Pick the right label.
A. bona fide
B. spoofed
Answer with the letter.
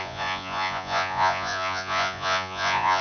B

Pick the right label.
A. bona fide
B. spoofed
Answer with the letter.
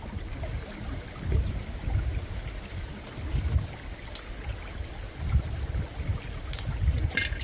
A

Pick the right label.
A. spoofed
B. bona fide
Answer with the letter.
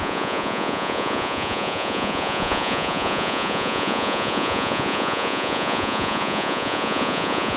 A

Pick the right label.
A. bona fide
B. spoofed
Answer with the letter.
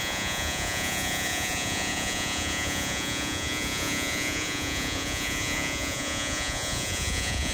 B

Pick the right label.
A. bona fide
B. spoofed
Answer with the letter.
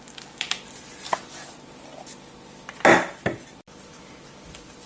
A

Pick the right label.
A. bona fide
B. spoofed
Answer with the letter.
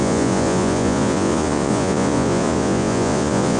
B